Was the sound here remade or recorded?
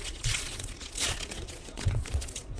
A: remade